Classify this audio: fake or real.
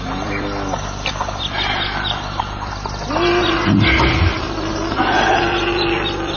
fake